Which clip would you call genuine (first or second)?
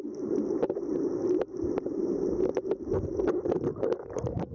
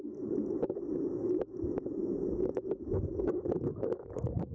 first